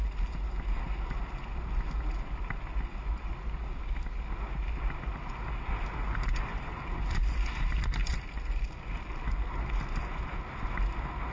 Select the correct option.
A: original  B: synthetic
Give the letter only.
A